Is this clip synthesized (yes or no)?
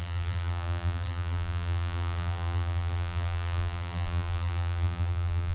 yes